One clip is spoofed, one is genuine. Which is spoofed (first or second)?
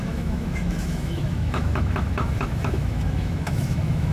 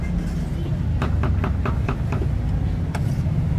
first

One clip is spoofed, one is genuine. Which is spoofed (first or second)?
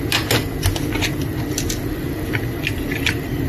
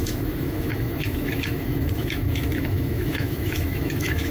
second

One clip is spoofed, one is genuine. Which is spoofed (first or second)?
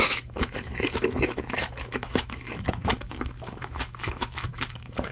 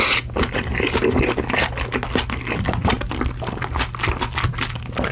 first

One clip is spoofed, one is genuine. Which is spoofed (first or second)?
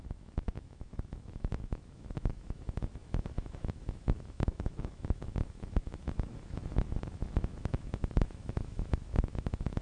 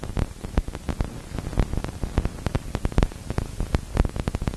first